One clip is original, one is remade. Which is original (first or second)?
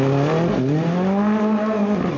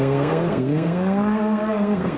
first